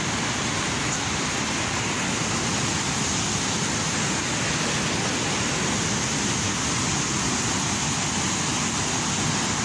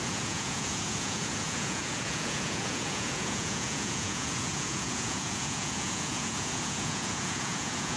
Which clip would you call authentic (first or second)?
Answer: first